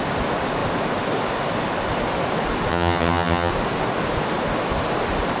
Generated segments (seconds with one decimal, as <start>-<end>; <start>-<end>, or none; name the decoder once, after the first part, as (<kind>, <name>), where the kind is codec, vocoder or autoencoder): 2.7-3.5 (vocoder, HiFi-GAN)